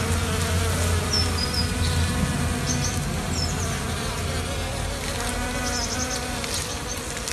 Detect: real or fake real